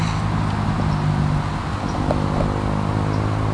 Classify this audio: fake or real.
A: real